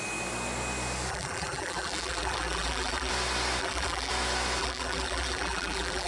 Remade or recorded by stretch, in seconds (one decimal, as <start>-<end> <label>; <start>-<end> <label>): 0.0-1.1 recorded; 1.1-3.1 remade; 3.1-3.6 recorded; 3.6-4.1 remade; 4.1-4.6 recorded; 4.6-6.1 remade